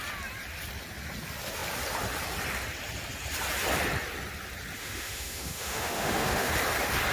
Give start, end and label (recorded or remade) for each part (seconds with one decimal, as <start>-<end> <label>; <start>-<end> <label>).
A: 0.0-4.8 recorded; 4.8-6.5 remade; 6.5-7.1 recorded